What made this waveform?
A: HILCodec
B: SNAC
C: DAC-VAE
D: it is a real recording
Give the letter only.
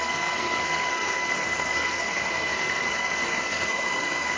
B